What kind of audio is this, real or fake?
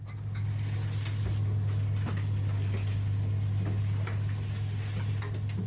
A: real